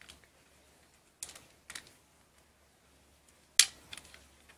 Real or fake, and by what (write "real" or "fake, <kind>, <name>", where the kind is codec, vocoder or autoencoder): real